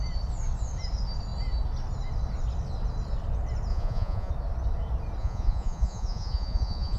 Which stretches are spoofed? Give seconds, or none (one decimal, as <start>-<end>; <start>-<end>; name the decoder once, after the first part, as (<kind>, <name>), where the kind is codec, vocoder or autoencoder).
3.7-4.3 (vocoder, Vocos); 5.2-7.0